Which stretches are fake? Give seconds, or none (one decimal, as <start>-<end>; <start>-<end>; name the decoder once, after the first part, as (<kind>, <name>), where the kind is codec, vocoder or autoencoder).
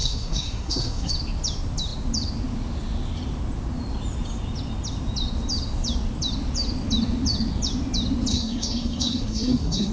0.0-1.1 (codec, SNAC); 8.3-9.9